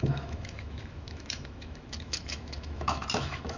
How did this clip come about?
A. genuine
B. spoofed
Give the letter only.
B